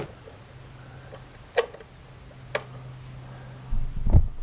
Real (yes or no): yes